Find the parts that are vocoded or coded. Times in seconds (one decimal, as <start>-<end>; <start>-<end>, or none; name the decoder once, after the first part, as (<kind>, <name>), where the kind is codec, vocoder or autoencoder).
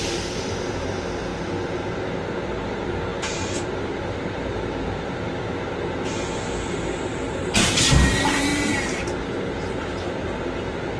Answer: 0.0-1.3 (vocoder, BigVGAN v2); 2.5-11.0